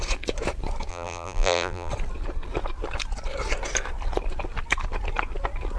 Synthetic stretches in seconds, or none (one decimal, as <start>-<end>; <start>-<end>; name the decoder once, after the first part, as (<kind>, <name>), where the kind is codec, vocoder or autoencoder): 0.9-1.9 (vocoder, BigVGAN v2)